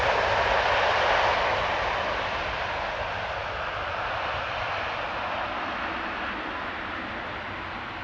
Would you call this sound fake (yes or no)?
no